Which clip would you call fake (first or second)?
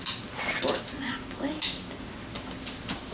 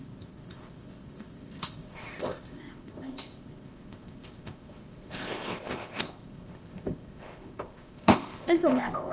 second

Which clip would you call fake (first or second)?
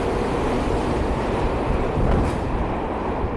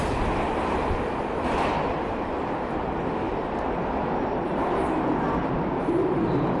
first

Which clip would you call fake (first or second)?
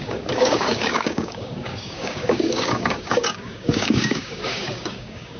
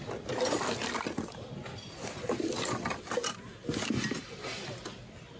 first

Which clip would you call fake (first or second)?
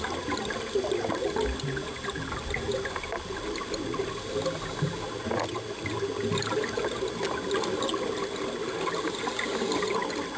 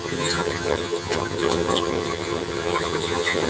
second